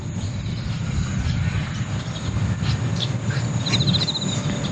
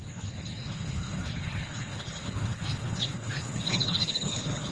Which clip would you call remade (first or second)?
second